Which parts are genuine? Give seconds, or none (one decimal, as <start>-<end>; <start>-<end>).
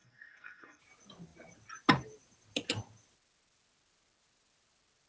0.8-5.1